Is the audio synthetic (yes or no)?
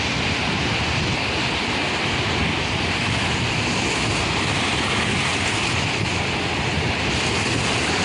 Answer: no